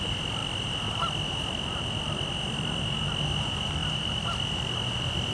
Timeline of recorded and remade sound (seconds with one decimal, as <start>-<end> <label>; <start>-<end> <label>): 0.0-5.3 recorded